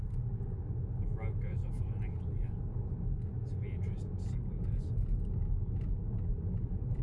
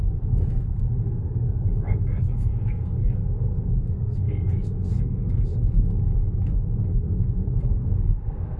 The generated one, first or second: second